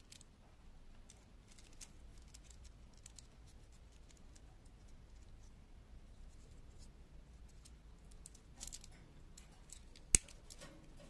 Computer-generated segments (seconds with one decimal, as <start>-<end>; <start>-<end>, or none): none